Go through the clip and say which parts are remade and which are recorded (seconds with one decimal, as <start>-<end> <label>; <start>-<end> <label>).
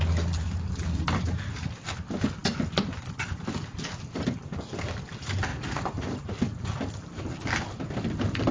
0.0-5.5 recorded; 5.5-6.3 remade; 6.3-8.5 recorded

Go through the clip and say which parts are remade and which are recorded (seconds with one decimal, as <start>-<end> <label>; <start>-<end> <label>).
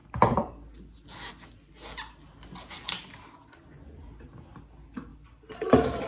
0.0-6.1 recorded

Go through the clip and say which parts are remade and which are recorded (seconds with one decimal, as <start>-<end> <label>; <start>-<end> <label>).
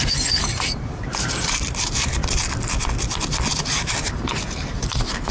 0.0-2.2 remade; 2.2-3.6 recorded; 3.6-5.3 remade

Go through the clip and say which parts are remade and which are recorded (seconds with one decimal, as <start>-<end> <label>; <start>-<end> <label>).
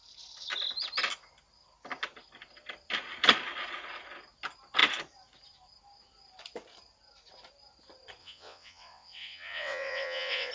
0.0-8.2 recorded; 8.2-10.5 remade